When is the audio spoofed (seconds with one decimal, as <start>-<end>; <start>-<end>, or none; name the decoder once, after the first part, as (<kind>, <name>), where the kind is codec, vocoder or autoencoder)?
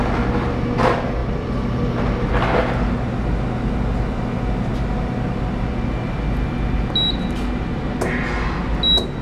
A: none